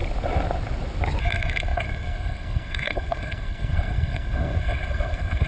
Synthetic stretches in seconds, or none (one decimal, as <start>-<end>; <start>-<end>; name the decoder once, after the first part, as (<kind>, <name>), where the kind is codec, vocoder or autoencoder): 1.2-5.5 (codec, SNAC)

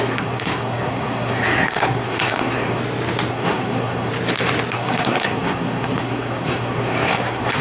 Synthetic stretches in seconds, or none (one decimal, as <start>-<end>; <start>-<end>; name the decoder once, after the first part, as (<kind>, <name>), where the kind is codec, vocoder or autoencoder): 0.0-2.8 (codec, SNAC); 3.3-4.1; 4.7-7.6

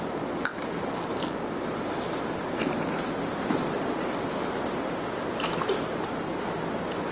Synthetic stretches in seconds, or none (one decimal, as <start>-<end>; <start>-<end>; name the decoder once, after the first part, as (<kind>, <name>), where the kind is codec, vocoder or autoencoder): none

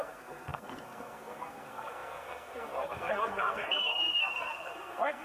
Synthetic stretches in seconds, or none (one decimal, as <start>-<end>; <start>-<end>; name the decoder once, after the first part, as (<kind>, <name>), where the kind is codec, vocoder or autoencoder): 0.0-5.2 (codec, SNAC)

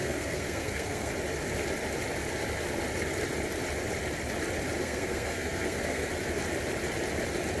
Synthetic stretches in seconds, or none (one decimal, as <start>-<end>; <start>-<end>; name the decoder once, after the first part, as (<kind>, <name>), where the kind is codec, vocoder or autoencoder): 0.0-1.1 (codec, SNAC); 4.8-6.1